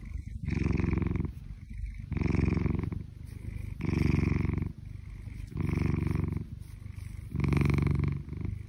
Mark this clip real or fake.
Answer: real